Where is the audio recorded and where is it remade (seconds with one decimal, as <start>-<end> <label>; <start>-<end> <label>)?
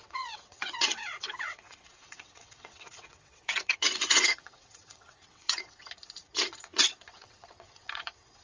0.0-5.8 remade; 5.8-6.3 recorded; 6.3-8.4 remade